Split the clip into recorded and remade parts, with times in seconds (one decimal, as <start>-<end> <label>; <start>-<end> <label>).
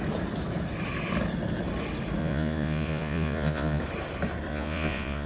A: 0.0-2.2 recorded; 2.2-3.8 remade; 3.8-4.5 recorded; 4.5-5.3 remade